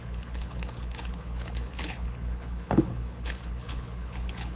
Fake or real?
fake